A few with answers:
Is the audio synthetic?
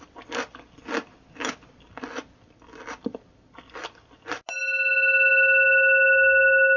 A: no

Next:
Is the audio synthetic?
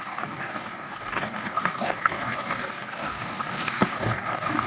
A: yes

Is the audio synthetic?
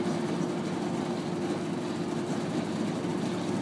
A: no